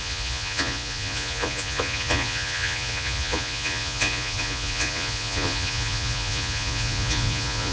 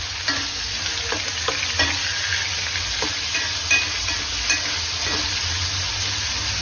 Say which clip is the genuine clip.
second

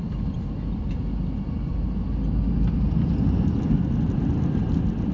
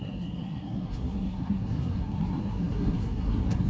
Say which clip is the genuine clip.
first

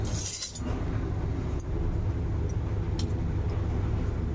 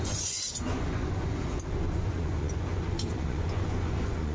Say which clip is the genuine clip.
first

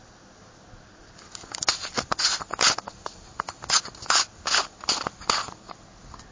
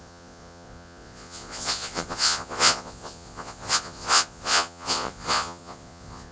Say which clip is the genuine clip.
first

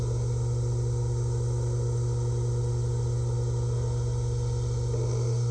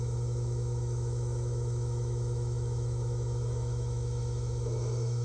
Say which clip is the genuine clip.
first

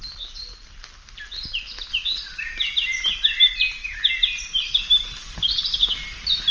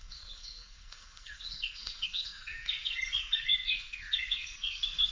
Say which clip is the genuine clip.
first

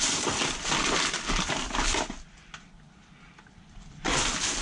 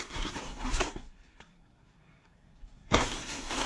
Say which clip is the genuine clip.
first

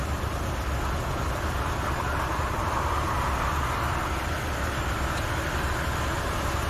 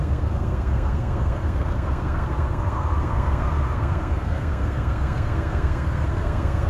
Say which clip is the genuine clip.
first